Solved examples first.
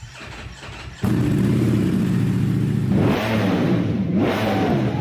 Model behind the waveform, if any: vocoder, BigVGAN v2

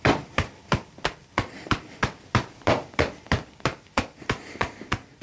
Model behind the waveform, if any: vocoder, BigVGAN v2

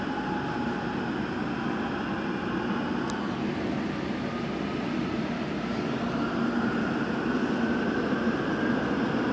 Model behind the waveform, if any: none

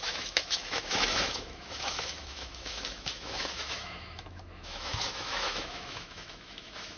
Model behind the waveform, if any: autoencoder, DAC-VAE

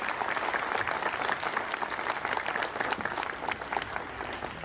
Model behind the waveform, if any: none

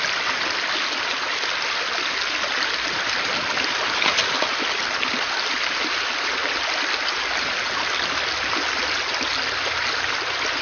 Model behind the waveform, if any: none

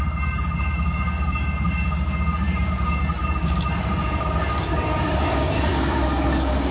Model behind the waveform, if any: codec, DAC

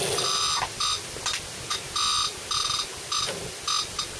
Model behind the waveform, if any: none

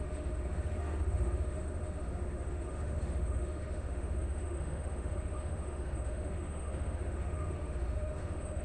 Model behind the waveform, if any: autoencoder, DAC-VAE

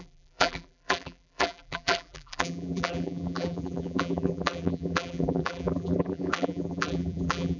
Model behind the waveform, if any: vocoder, BigVGAN v2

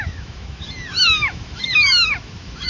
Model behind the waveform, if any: autoencoder, DAC-VAE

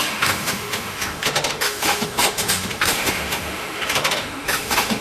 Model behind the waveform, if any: autoencoder, DAC-VAE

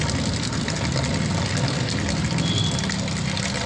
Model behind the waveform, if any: none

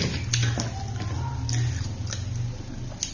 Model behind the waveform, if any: none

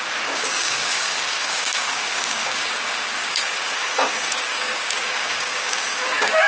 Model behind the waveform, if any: codec, DAC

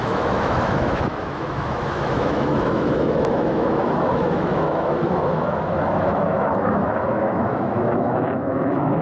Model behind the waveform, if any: autoencoder, DAC-VAE